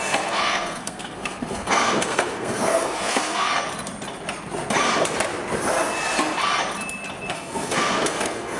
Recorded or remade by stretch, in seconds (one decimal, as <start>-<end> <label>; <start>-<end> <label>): 0.0-3.5 remade; 3.5-7.3 recorded; 7.3-8.6 remade